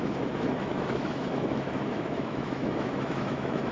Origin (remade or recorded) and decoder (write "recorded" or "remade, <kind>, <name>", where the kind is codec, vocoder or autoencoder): remade, autoencoder, DAC-VAE